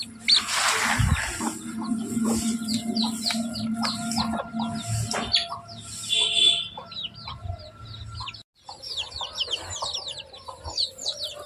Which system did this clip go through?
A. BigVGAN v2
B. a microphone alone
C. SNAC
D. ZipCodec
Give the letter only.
B